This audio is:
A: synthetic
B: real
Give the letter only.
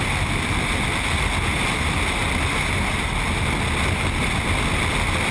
B